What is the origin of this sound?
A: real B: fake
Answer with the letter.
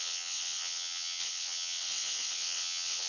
B